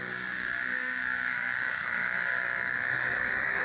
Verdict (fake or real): fake